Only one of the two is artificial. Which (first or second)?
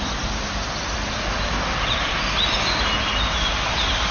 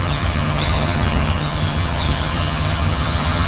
second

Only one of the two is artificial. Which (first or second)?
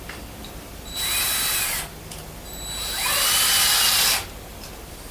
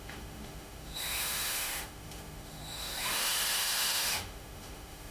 second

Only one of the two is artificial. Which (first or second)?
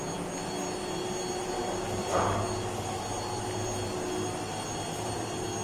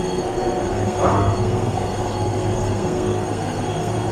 second